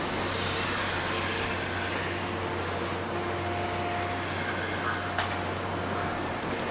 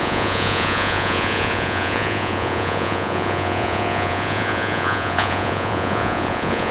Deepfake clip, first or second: second